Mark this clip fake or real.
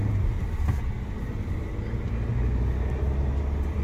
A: real